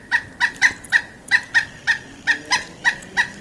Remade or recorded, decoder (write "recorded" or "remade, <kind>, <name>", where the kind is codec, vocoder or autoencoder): recorded